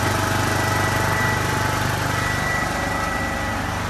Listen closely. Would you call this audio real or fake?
real